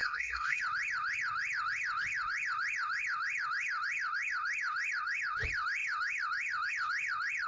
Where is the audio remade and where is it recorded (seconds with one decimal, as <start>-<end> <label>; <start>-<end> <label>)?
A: 0.0-0.6 remade; 0.6-7.5 recorded

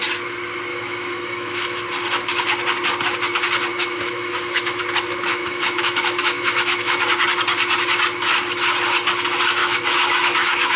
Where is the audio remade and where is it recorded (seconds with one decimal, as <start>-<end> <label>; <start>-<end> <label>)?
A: 0.0-0.7 recorded; 0.7-1.8 remade; 1.8-3.7 recorded; 3.7-4.8 remade; 4.8-5.3 recorded; 5.3-7.0 remade; 7.0-9.6 recorded; 9.6-10.8 remade

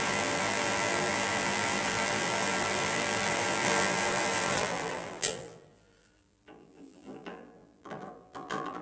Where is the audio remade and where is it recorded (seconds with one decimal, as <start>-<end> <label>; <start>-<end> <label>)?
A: 0.0-8.8 remade

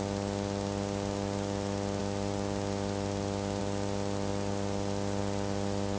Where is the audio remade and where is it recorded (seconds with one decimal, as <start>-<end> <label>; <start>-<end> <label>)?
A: 0.0-6.0 recorded

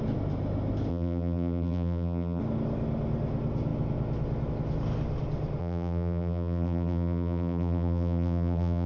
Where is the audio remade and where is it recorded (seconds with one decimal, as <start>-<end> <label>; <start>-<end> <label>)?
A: 0.0-0.9 recorded; 0.9-2.4 remade; 2.4-5.6 recorded; 5.6-8.9 remade